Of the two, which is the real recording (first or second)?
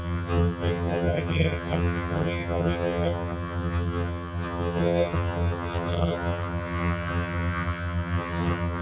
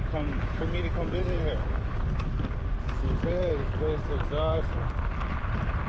second